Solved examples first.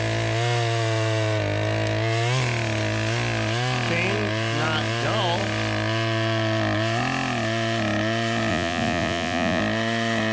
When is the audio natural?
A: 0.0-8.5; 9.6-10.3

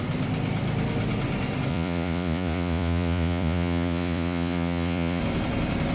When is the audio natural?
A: 0.0-1.7; 5.2-5.9

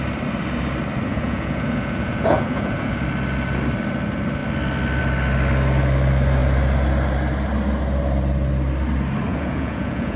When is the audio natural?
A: 0.0-1.1; 2.9-9.3